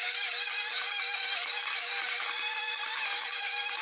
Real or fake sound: fake